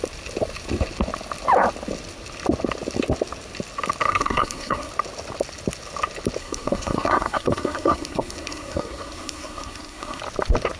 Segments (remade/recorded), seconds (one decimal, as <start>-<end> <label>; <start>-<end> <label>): 0.0-4.1 recorded; 4.1-4.9 remade; 4.9-6.4 recorded; 6.4-10.2 remade; 10.2-10.8 recorded